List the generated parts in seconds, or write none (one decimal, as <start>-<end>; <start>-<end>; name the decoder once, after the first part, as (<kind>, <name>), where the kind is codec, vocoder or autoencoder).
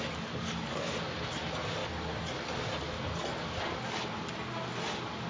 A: none